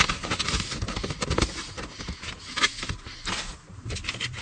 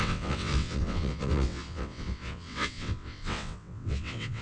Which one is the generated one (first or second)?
second